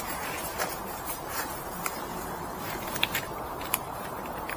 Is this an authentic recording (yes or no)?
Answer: no